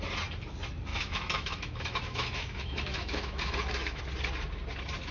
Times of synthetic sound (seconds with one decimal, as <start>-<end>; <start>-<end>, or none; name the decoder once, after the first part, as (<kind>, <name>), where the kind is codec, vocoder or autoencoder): 0.9-4.0 (autoencoder, DAC-VAE)